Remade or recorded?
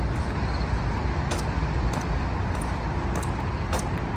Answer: recorded